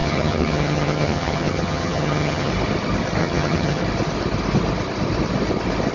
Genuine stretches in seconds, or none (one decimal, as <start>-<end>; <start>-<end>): 2.5-3.2; 3.8-5.9